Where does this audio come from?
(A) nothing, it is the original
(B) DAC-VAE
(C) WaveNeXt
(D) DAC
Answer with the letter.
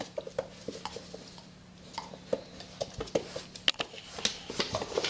A